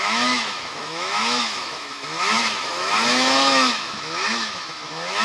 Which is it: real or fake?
fake